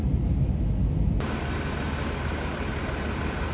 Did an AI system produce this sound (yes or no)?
no